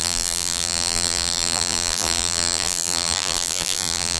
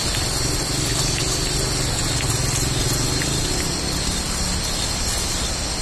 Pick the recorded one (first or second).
second